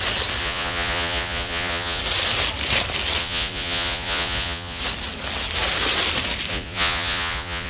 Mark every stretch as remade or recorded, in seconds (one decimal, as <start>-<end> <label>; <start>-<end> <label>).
0.0-0.4 recorded; 0.4-2.0 remade; 2.0-3.2 recorded; 3.2-4.8 remade; 4.8-6.5 recorded; 6.5-7.7 remade